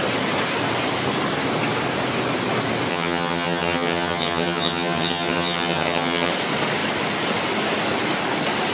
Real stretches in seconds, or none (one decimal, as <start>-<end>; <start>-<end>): 0.0-2.9; 6.3-8.7

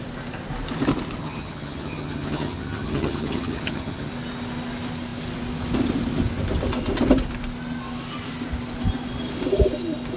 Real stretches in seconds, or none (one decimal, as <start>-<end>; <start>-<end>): 0.0-1.2; 4.1-10.2